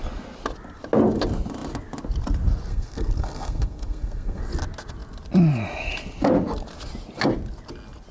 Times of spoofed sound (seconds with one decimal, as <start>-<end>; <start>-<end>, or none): 2.7-4.4